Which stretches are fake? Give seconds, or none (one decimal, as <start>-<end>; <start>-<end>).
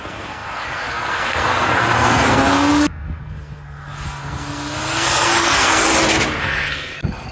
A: 0.0-5.9; 6.4-7.3